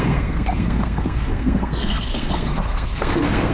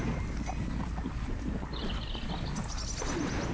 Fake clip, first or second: first